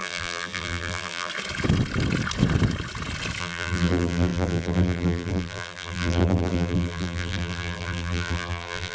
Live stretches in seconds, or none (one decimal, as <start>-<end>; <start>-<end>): 1.3-3.4